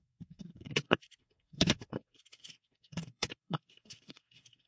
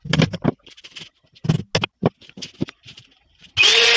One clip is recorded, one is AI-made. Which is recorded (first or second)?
second